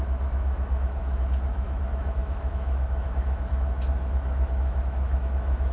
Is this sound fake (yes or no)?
yes